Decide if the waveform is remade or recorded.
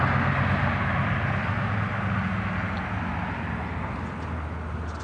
recorded